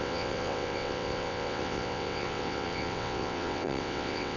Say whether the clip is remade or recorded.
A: remade